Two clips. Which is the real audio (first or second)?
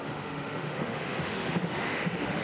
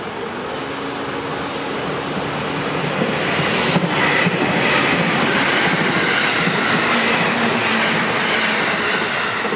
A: second